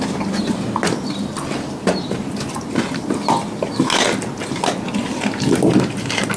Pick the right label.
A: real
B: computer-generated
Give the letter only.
A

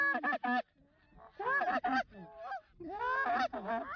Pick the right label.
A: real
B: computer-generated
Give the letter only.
A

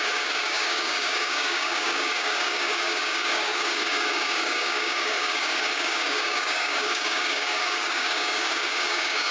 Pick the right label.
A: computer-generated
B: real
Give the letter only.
A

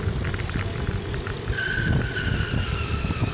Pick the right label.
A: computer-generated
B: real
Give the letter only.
B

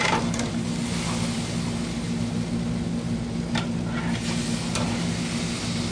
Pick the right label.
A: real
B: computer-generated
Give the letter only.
A